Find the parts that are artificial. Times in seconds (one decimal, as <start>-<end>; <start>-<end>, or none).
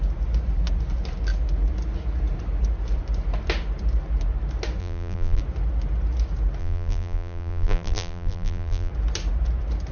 4.8-5.4; 6.6-8.9